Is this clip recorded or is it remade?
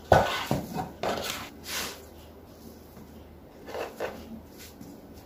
recorded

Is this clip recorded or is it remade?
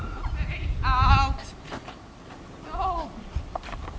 recorded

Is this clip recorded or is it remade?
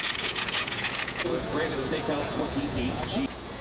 remade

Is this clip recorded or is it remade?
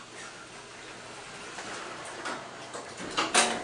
recorded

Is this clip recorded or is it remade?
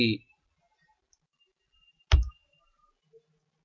recorded